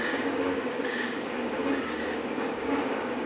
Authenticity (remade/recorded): remade